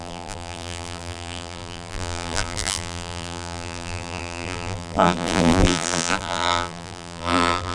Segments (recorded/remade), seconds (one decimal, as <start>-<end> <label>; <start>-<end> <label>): 0.0-7.7 remade